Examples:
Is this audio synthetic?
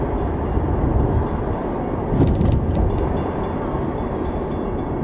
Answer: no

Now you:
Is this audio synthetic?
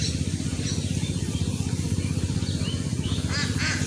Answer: no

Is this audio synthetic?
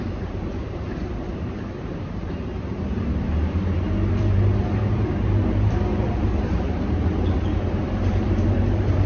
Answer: yes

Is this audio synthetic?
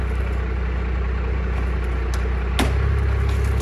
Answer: no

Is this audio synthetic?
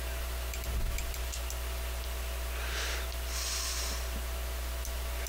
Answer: no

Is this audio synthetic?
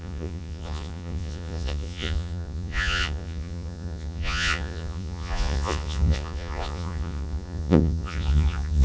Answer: yes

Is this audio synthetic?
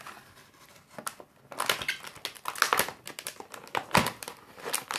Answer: no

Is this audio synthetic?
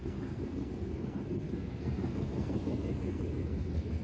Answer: yes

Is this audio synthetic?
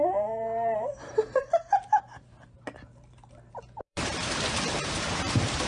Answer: yes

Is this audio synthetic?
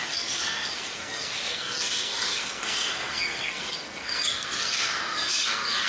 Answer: yes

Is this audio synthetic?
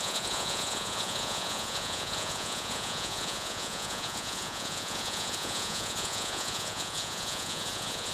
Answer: yes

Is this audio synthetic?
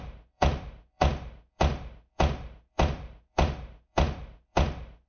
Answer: yes